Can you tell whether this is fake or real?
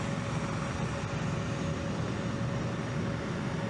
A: real